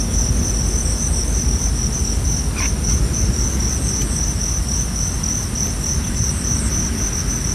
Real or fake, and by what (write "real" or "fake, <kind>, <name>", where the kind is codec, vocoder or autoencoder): real